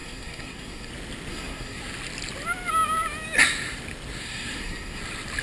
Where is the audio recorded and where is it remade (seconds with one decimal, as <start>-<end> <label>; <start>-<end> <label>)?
0.0-0.9 remade; 0.9-1.3 recorded; 1.3-1.8 remade; 1.8-4.2 recorded; 4.2-5.0 remade; 5.0-5.4 recorded